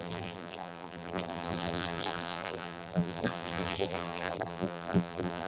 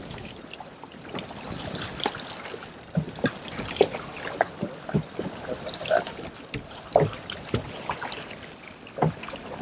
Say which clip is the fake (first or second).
first